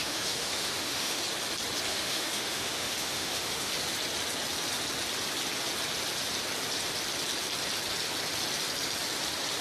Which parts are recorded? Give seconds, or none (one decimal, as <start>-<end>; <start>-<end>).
1.2-1.9; 3.7-9.6